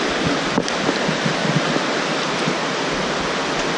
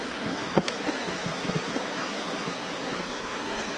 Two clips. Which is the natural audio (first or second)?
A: first